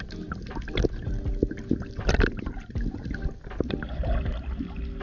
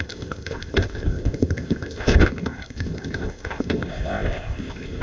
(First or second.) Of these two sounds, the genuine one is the first